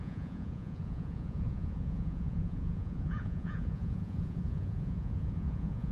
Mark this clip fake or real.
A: fake